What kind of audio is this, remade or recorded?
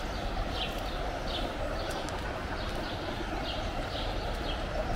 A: recorded